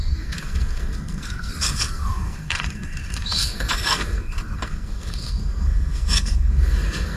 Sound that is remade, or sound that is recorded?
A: remade